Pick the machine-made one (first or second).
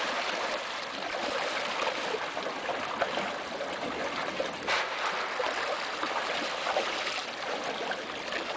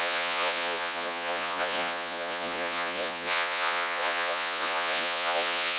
second